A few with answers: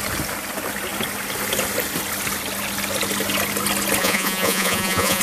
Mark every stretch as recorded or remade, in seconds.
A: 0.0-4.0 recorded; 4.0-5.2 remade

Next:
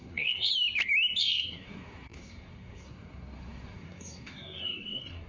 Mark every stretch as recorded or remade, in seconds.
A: 0.0-0.5 remade; 0.5-1.2 recorded; 1.2-5.3 remade

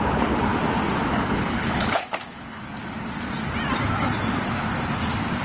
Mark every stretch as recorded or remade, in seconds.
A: 0.0-0.5 remade; 0.5-1.1 recorded; 1.1-2.6 remade; 2.6-5.4 recorded

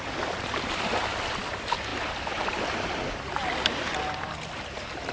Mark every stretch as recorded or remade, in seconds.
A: 0.0-1.9 remade; 1.9-5.1 recorded

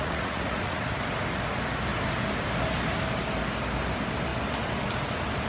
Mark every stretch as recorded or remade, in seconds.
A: 0.0-0.8 remade; 0.8-5.5 recorded

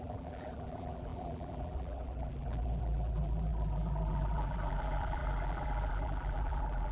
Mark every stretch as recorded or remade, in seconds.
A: 0.0-6.9 remade

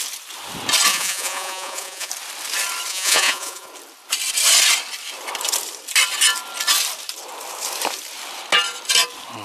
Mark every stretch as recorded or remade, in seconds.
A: 0.0-0.9 recorded; 0.9-2.1 remade; 2.1-2.9 recorded; 2.9-3.7 remade; 3.7-9.4 recorded

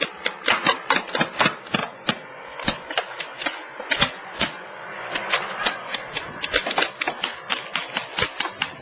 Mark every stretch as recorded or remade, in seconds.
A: 0.0-1.8 recorded; 1.8-6.4 remade; 6.4-8.8 recorded